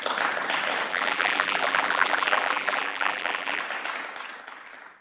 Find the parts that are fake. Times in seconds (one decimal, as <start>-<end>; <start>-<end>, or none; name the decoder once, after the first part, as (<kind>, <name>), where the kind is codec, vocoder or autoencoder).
0.9-3.6 (vocoder, BigVGAN v2)